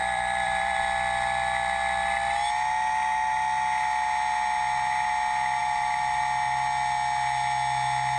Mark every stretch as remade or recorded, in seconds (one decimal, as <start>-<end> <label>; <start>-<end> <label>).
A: 0.0-0.8 remade; 0.8-5.6 recorded; 5.6-6.2 remade; 6.2-8.2 recorded